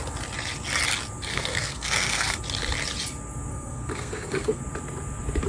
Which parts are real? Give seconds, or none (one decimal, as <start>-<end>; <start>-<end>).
0.0-1.3; 2.4-3.5; 4.6-5.5